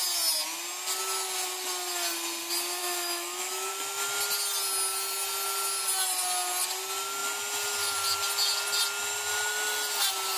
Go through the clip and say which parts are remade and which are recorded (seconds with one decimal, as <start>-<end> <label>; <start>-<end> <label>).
0.0-2.8 recorded; 2.8-3.7 remade; 3.7-10.4 recorded